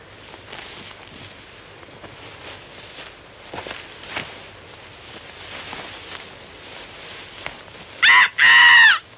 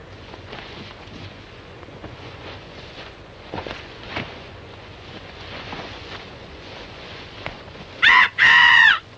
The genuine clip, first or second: first